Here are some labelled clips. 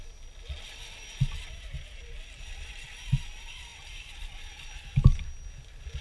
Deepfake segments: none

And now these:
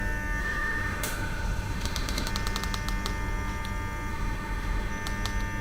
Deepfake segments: 0.4-2.3 (autoencoder, DAC-VAE); 4.1-4.9

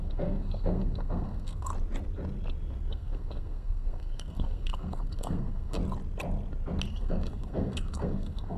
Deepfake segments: 0.0-1.7 (codec, SNAC); 2.9-5.8; 6.9-8.6